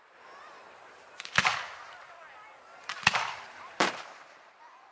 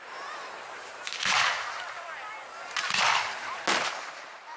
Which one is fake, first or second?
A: first